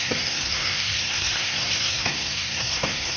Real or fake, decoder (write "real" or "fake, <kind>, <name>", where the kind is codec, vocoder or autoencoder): fake, codec, SNAC